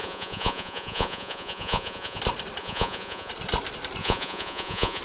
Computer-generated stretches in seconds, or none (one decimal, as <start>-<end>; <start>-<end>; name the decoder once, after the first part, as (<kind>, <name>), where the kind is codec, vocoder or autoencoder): 0.0-2.2 (vocoder, Vocos); 2.6-3.3; 4.0-5.0